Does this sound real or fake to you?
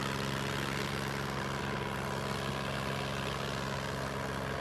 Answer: real